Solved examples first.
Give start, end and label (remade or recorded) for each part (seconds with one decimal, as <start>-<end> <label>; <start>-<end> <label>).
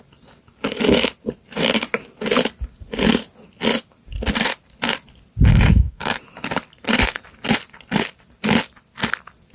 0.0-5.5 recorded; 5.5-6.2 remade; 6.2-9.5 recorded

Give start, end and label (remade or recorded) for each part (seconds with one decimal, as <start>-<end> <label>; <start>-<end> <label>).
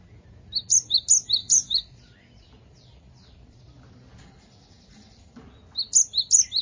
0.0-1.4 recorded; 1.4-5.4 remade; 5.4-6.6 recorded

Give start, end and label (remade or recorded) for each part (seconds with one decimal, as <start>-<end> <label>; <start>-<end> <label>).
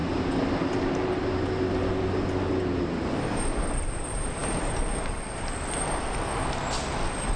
0.0-7.4 recorded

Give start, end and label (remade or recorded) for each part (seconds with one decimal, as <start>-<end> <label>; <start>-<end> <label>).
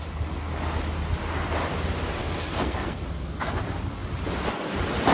0.0-2.2 recorded; 2.2-3.0 remade; 3.0-5.1 recorded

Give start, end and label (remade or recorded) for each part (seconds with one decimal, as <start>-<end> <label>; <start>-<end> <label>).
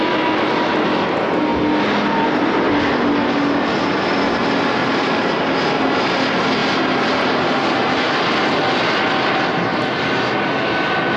0.0-4.8 recorded; 4.8-5.3 remade; 5.3-11.2 recorded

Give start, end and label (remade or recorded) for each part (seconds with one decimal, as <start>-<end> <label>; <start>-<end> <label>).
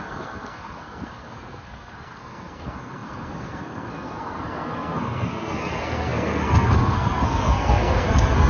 0.0-8.5 remade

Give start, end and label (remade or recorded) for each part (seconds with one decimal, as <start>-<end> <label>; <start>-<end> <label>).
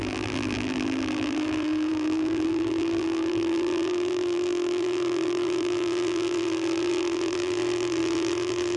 0.0-8.8 remade